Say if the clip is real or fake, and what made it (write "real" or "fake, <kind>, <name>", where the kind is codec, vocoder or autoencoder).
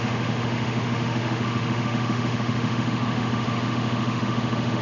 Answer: fake, autoencoder, DAC-VAE